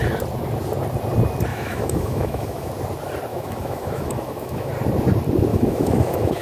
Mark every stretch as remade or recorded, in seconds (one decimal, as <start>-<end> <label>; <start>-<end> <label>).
0.0-1.5 recorded; 1.5-2.7 remade; 2.7-3.3 recorded; 3.3-4.7 remade; 4.7-5.5 recorded; 5.5-6.4 remade